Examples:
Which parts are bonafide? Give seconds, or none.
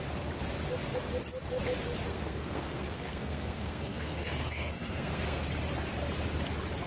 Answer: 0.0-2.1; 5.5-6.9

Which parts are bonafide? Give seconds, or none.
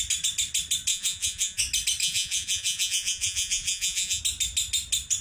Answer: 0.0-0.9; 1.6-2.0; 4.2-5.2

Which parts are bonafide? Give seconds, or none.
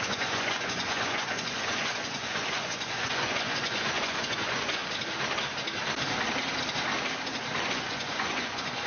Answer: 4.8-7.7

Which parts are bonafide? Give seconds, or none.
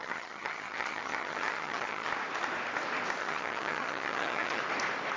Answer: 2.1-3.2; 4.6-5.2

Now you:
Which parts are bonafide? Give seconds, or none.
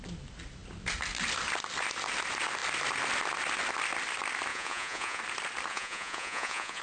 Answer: 0.0-4.5; 5.2-5.7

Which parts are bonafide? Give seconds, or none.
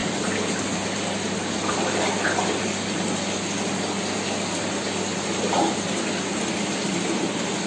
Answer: 0.0-7.7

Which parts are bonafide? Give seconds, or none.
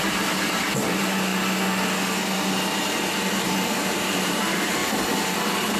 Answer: 1.3-3.4; 4.8-5.3